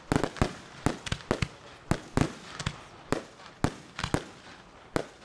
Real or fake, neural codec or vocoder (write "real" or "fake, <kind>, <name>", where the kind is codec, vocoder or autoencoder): real